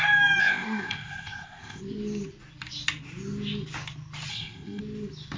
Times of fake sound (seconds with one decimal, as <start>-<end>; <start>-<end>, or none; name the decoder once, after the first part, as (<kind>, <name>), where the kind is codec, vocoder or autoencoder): 0.4-1.8 (codec, ZipCodec); 4.3-4.8